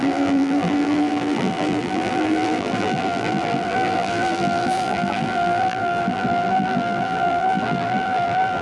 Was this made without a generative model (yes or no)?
no